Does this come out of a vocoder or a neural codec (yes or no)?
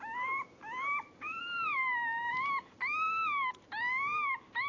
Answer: yes